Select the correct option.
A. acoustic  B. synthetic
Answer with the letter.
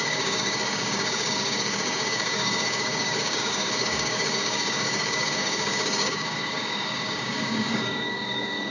B